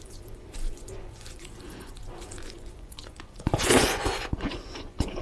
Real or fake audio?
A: fake